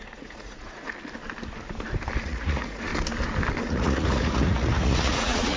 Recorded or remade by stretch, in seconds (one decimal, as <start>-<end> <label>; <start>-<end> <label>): 0.0-0.9 remade; 0.9-2.2 recorded; 2.2-2.9 remade; 2.9-3.6 recorded; 3.6-5.6 remade